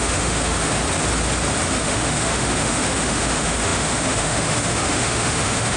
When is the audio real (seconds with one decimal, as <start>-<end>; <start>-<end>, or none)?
0.7-1.8

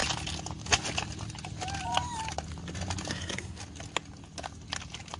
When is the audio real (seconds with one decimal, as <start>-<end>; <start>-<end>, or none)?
0.0-3.1; 3.6-5.2